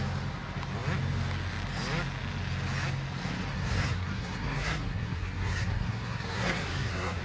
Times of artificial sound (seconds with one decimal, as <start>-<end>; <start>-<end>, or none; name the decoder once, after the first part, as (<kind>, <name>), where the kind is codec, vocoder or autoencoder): 3.5-7.2 (codec, SNAC)